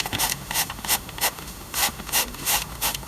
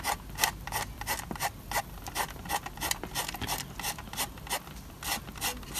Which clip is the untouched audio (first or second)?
second